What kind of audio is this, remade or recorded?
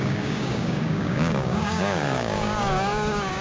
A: remade